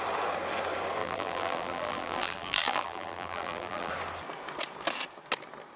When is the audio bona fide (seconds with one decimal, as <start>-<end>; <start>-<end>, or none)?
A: 0.0-1.0; 3.9-5.8